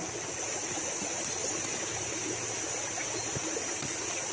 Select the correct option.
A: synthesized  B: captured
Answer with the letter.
B